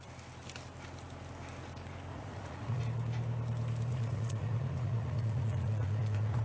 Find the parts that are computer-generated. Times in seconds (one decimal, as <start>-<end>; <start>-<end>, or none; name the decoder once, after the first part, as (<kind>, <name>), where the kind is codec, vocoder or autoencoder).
2.1-2.8 (vocoder, Vocos); 3.9-6.4